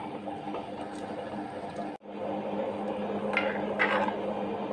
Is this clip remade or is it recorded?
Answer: recorded